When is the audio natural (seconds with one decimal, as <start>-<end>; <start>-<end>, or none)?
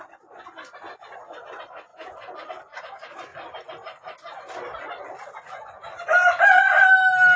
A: 0.0-7.4